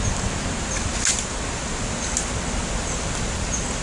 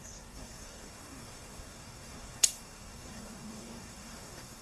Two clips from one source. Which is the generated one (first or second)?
second